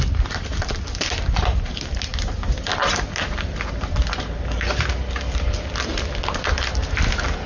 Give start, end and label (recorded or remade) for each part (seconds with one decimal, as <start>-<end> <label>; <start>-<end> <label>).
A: 0.0-7.5 recorded